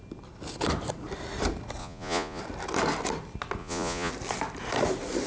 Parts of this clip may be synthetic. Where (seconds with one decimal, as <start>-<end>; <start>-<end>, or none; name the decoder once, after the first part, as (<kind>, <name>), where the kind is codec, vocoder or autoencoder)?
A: 1.8-2.4 (vocoder, Vocos); 3.6-4.1

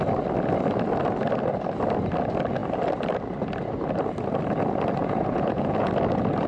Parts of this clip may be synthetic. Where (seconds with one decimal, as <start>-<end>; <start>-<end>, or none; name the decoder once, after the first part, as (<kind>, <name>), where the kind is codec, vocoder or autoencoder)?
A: 5.0-5.9 (vocoder, Vocos)

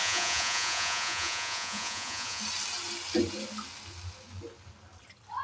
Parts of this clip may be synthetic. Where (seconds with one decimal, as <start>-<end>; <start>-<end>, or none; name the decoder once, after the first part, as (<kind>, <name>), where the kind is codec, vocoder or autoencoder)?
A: 0.0-2.4 (vocoder, Vocos)

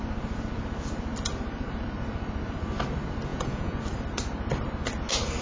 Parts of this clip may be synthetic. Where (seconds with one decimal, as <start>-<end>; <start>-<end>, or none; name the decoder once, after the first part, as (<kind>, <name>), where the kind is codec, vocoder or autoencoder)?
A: 3.3-3.8 (vocoder, Vocos)

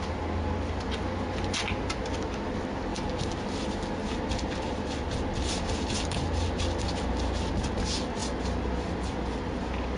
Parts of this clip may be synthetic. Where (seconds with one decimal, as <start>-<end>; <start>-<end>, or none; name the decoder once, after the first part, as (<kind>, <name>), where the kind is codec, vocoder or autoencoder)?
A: none

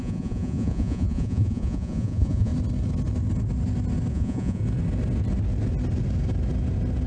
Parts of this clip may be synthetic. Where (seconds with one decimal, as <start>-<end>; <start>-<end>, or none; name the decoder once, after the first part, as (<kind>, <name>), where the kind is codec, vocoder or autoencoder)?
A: 0.0-2.5 (vocoder, Vocos); 4.1-4.6

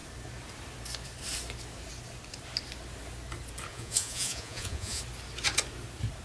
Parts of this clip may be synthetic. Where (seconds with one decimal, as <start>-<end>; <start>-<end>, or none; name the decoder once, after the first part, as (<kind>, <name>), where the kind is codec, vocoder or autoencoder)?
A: 3.7-5.0 (vocoder, Vocos)